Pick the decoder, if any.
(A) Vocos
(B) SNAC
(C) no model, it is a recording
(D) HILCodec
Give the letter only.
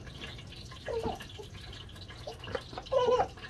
C